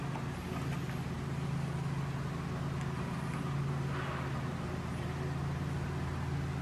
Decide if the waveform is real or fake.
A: fake